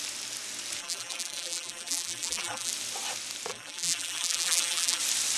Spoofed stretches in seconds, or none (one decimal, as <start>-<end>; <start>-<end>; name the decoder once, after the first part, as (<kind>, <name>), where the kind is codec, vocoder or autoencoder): 0.8-2.7 (vocoder, BigVGAN v2); 3.5-5.0